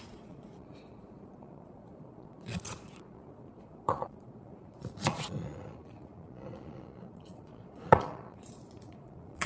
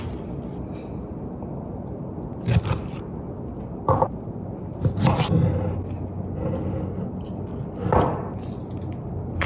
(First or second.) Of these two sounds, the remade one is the first